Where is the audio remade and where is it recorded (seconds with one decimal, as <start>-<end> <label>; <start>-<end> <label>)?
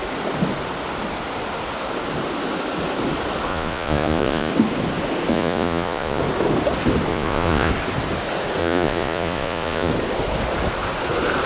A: 0.0-3.5 recorded; 3.5-4.5 remade; 4.5-5.3 recorded; 5.3-6.2 remade; 6.2-7.1 recorded; 7.1-7.7 remade; 7.7-8.6 recorded; 8.6-9.9 remade; 9.9-11.5 recorded